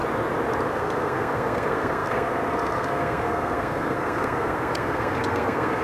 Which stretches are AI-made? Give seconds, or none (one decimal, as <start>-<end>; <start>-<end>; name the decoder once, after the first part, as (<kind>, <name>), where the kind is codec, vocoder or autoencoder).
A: 0.7-5.8 (codec, SNAC)